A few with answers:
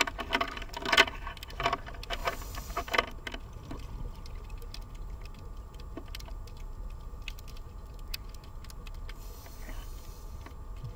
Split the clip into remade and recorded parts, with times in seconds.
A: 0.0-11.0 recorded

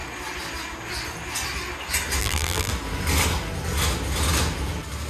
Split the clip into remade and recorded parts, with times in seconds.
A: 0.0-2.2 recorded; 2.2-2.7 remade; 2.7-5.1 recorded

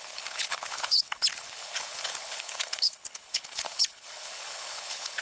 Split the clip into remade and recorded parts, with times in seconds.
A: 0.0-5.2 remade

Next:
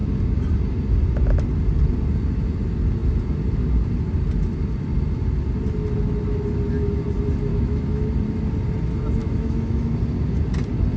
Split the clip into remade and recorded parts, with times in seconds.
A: 0.0-7.5 recorded; 7.5-8.1 remade; 8.1-9.2 recorded; 9.2-9.9 remade; 9.9-11.0 recorded

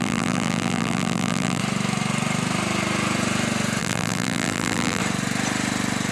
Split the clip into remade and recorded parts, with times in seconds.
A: 0.0-1.6 remade; 1.6-3.8 recorded; 3.8-5.0 remade; 5.0-6.1 recorded

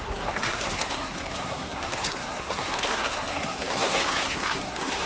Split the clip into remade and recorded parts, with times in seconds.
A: 0.0-5.1 remade

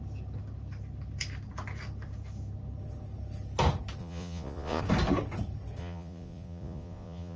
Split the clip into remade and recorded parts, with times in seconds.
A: 0.0-4.0 recorded; 4.0-4.8 remade; 4.8-5.8 recorded; 5.8-7.4 remade